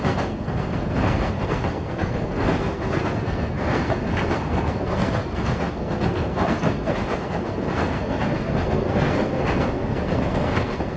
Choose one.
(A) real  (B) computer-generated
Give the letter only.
B